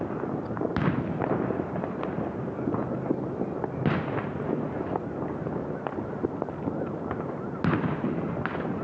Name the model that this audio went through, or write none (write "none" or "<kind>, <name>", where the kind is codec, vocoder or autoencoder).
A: none